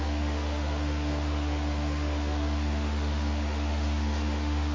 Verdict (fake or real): fake